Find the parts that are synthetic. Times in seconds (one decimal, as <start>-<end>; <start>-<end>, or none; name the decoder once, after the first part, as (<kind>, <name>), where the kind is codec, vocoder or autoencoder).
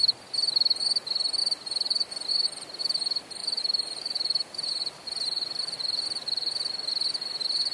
1.4-2.1 (vocoder, BigVGAN v2); 3.4-6.0